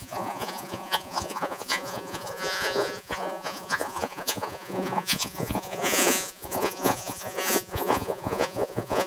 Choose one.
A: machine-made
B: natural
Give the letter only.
A